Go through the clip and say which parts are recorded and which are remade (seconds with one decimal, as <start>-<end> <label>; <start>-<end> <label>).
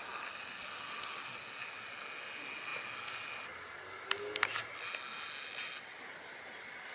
0.0-6.9 recorded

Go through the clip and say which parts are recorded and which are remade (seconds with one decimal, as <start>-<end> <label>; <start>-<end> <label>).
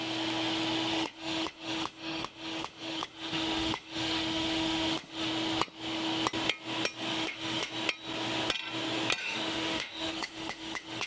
0.0-0.9 recorded; 0.9-5.3 remade; 5.3-7.1 recorded; 7.1-7.7 remade; 7.7-9.2 recorded; 9.2-11.1 remade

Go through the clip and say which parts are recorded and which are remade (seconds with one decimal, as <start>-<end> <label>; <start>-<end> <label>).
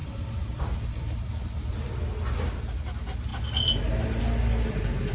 0.0-1.6 remade; 1.6-5.1 recorded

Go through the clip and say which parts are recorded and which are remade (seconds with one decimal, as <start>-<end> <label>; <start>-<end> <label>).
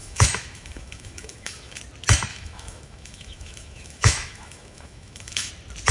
0.0-1.8 remade; 1.8-2.3 recorded; 2.3-5.5 remade; 5.5-5.9 recorded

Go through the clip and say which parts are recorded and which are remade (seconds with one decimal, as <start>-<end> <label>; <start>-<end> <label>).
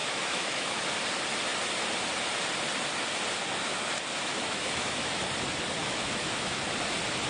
0.0-0.8 remade; 0.8-4.3 recorded; 4.3-5.2 remade; 5.2-5.8 recorded; 5.8-6.6 remade; 6.6-7.3 recorded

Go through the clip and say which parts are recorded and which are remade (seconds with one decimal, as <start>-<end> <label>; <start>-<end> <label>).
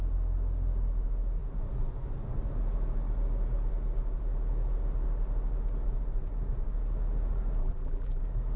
0.0-7.6 recorded; 7.6-8.2 remade; 8.2-8.6 recorded